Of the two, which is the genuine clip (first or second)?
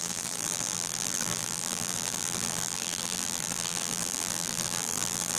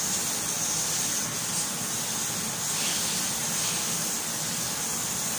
second